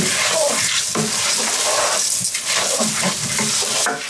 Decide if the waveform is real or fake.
real